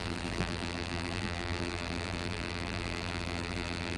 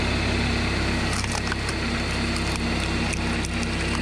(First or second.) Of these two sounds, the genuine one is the second